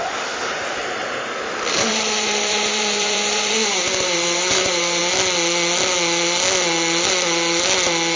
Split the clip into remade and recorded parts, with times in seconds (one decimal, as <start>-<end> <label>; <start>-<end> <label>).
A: 0.0-1.0 remade; 1.0-1.7 recorded; 1.7-5.0 remade; 5.0-8.2 recorded